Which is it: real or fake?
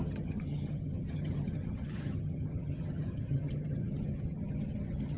fake